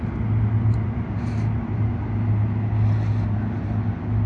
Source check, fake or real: real